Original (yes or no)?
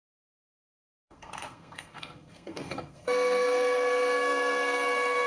no